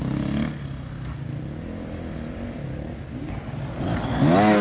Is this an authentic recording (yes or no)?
yes